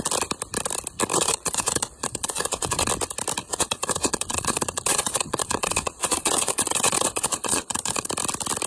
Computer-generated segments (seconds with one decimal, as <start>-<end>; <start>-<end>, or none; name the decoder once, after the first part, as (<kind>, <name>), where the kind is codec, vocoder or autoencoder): 1.1-2.9 (vocoder, Vocos); 3.4-8.1